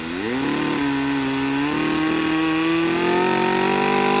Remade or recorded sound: recorded